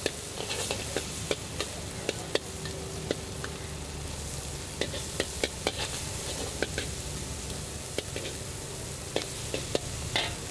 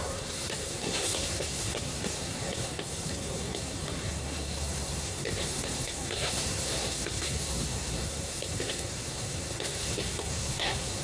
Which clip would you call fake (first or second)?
second